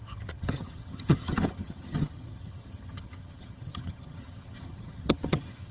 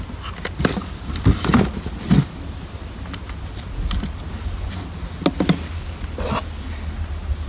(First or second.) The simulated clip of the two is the first